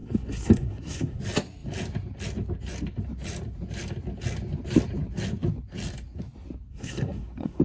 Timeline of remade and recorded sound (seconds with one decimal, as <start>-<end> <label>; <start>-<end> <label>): 0.0-1.2 remade; 1.2-6.7 recorded; 6.7-7.6 remade